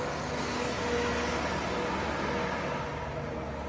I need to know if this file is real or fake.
real